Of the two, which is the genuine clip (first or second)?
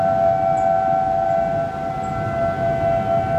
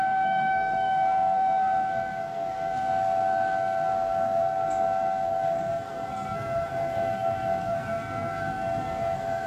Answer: first